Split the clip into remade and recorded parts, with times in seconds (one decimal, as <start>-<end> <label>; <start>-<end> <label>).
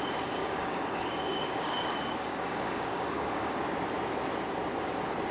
0.0-0.4 recorded; 0.4-3.6 remade; 3.6-5.3 recorded